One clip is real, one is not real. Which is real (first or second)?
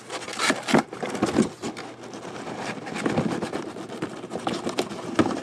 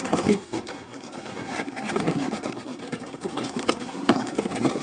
first